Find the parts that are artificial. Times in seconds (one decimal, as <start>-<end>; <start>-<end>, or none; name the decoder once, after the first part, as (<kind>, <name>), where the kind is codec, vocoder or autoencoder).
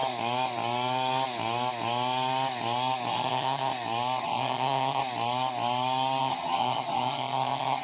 3.1-3.7 (vocoder, HiFi-GAN); 4.2-5.0; 6.2-7.8